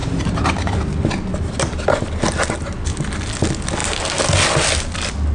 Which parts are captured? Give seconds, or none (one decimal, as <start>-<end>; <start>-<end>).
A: 0.0-5.3